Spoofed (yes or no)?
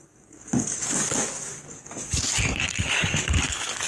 yes